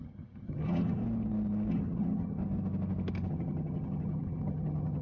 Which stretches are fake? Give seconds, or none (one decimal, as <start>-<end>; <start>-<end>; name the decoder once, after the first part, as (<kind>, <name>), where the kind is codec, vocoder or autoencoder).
0.0-1.0 (vocoder, HiFi-GAN); 1.7-2.4; 3.3-5.0